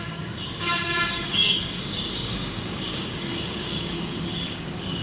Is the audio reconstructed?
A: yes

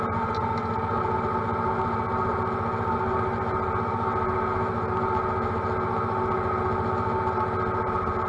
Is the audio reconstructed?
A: no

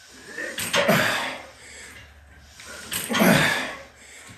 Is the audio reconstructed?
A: no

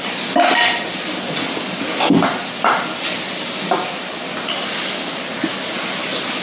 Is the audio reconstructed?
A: no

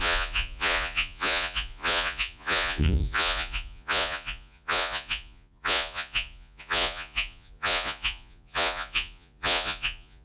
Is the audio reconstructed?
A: yes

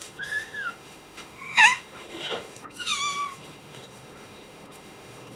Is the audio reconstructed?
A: yes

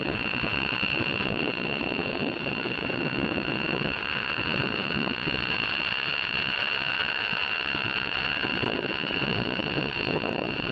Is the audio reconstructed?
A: yes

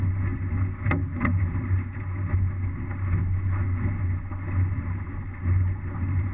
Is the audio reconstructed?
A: no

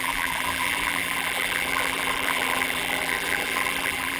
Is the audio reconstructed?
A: yes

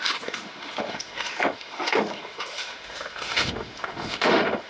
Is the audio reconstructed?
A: yes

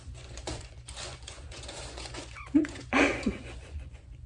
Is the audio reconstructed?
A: yes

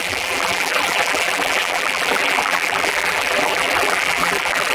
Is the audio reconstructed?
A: yes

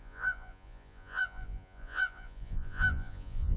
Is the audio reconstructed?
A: yes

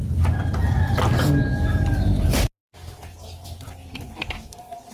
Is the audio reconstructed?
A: no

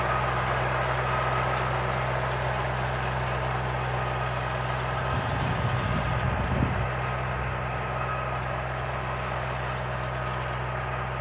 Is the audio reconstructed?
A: no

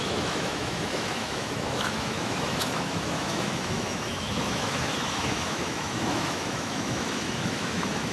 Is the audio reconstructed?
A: yes